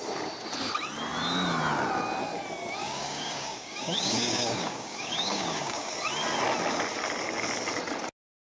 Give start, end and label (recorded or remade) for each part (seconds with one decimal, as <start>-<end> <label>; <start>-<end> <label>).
0.0-2.8 recorded; 2.8-5.9 remade; 5.9-8.4 recorded